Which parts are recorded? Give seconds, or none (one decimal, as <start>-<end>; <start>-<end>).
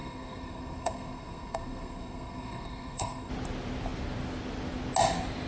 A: 3.3-5.5